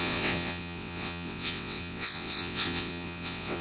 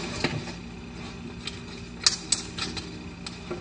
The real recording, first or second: second